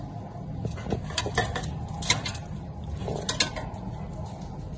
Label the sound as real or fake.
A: real